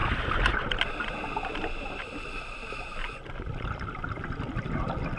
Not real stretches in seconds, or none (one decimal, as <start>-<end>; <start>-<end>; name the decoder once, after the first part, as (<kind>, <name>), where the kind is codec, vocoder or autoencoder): none